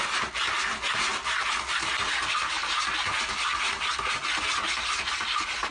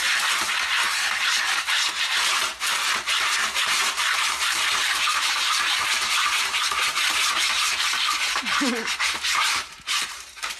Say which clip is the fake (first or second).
second